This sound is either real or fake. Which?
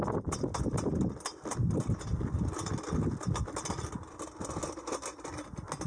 real